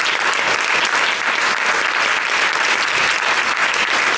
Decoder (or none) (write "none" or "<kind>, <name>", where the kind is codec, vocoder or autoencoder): none